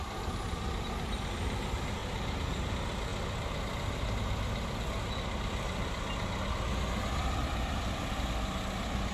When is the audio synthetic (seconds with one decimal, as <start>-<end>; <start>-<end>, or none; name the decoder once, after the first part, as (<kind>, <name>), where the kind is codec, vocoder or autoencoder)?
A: 2.0-2.7 (vocoder, BigVGAN v2)